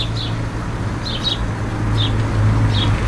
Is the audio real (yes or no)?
yes